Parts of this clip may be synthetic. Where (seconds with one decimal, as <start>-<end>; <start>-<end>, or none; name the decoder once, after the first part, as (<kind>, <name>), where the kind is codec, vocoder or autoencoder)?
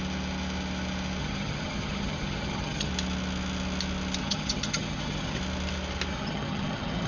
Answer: 1.2-2.9 (vocoder, HiFi-GAN); 4.2-5.4; 6.1-7.1